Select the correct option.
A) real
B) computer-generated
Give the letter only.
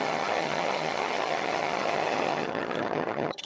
B